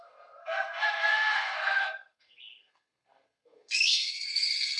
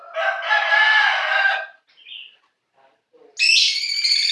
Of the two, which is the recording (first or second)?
second